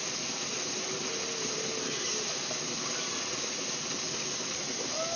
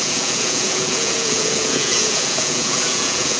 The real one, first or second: first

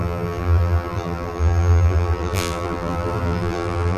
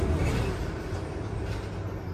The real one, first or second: second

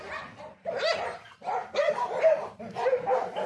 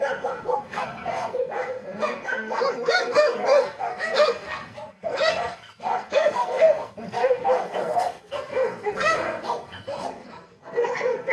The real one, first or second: first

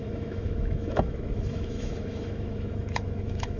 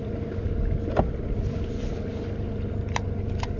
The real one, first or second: second